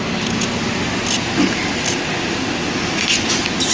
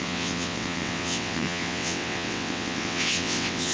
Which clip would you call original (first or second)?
first